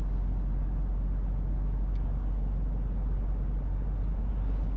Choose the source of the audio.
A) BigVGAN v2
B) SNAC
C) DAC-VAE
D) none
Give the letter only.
D